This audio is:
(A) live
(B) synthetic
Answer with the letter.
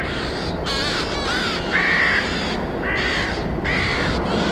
A